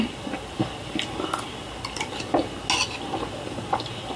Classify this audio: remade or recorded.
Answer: recorded